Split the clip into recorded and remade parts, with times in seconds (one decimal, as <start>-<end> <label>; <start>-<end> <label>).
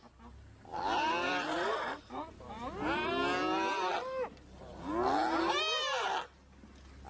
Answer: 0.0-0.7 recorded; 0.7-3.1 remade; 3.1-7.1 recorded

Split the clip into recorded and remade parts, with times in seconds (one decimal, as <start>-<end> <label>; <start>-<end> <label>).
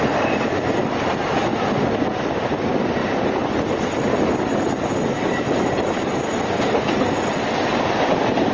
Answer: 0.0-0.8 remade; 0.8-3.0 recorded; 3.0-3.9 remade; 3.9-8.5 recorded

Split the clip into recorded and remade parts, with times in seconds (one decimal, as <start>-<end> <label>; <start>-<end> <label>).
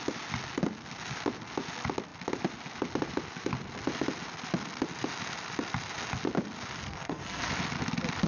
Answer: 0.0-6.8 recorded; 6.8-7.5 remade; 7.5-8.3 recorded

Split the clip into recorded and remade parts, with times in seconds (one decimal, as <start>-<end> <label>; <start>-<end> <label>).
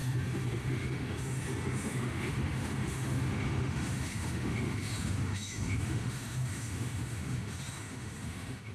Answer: 0.0-8.7 remade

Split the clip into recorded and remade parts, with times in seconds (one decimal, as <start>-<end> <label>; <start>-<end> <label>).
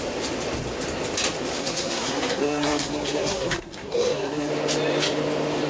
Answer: 0.0-1.6 recorded; 1.6-4.5 remade; 4.5-5.7 recorded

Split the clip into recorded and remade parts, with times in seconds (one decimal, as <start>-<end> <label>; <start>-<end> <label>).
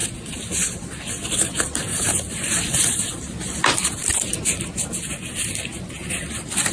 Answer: 0.0-1.9 recorded; 1.9-2.8 remade; 2.8-6.7 recorded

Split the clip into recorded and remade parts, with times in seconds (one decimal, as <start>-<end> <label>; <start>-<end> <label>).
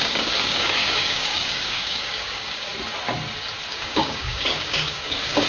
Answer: 0.0-2.7 remade; 2.7-3.7 recorded; 3.7-5.5 remade